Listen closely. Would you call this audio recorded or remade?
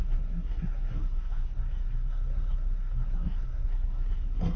remade